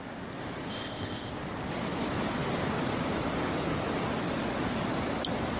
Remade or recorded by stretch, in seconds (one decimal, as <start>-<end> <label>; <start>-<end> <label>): 0.0-0.7 recorded; 0.7-1.3 remade; 1.3-5.6 recorded